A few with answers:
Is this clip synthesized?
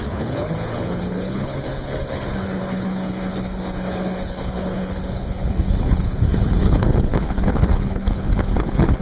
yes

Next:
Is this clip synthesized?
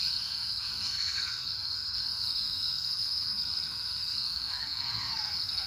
yes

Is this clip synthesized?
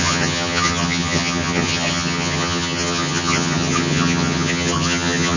yes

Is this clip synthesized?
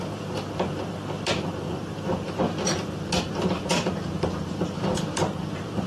yes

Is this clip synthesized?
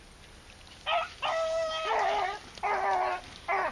no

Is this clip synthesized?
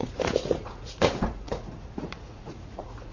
yes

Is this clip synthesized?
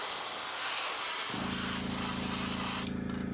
no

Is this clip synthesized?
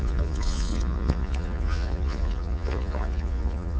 yes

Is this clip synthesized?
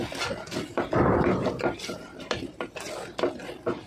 no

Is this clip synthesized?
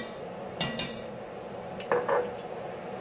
no